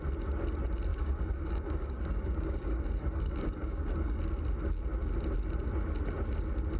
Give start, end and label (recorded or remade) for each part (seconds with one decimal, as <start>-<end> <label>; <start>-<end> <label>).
0.0-0.9 recorded; 0.9-4.2 remade; 4.2-6.8 recorded